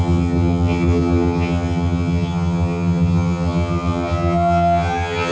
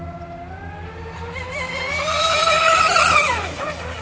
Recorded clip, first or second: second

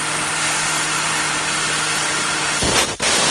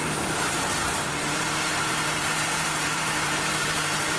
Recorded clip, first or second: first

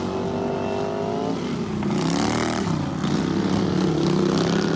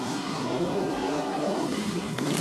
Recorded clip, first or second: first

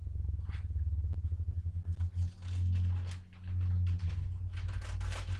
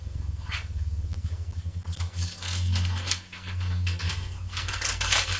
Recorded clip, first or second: first